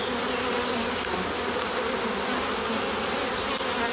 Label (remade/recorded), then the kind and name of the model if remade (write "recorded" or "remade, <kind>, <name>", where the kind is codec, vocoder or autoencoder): recorded